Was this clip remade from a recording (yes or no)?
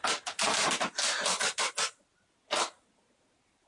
no